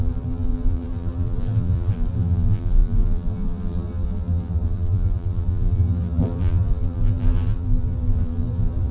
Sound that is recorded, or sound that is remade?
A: remade